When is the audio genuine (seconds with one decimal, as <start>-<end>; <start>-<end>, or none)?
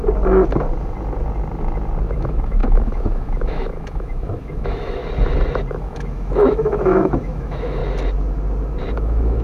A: 0.0-2.1; 5.0-5.7; 7.8-8.9